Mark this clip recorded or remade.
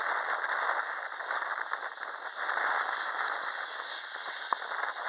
recorded